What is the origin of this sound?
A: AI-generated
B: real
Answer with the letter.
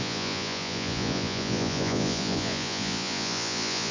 A